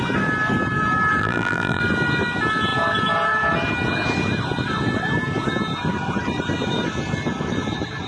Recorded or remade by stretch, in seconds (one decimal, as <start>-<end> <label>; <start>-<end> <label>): 0.0-1.2 recorded; 1.2-1.8 remade; 1.8-8.1 recorded